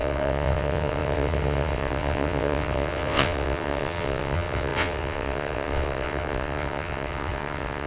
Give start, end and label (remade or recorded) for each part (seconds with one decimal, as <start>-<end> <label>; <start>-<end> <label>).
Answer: 0.0-7.9 remade